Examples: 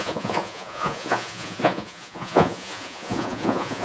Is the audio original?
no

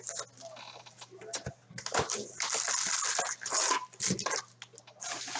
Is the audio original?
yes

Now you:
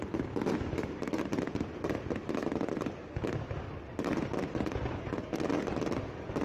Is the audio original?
yes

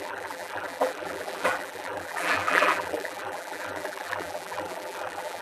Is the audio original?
no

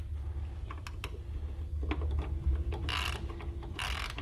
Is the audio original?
yes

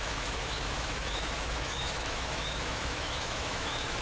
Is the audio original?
no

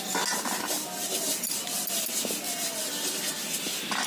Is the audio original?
yes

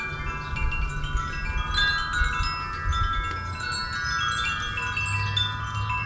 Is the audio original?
yes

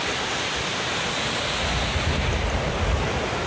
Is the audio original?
yes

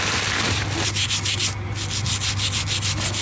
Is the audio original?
yes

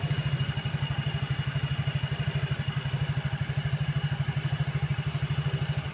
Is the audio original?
yes